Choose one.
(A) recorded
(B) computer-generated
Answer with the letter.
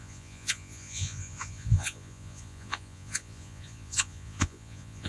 B